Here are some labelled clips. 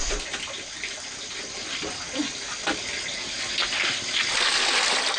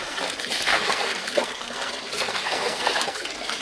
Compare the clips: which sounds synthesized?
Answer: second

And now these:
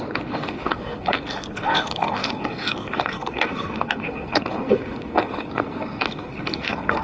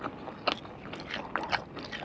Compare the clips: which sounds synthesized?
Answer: first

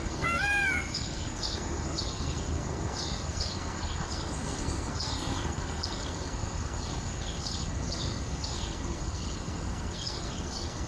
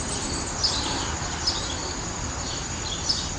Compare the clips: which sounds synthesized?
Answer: first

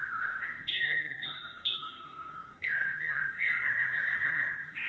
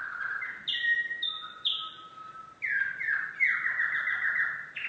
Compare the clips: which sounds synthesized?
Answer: first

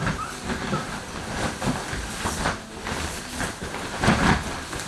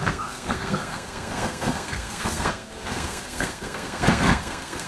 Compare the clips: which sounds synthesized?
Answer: second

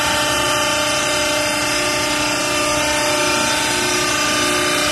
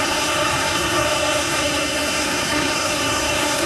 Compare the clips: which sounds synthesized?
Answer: second